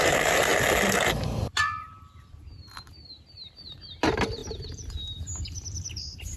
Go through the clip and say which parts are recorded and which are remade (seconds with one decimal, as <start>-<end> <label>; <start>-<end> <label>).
0.0-0.5 remade; 0.5-1.4 recorded; 1.4-4.4 remade; 4.4-5.9 recorded; 5.9-6.4 remade

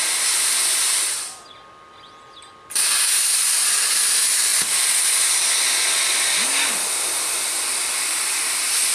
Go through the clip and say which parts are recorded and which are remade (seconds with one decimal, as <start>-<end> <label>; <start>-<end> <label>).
0.0-8.9 recorded

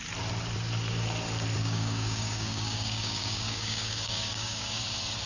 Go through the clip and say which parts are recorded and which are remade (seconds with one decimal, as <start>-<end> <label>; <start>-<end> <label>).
0.0-1.6 recorded; 1.6-4.8 remade; 4.8-5.3 recorded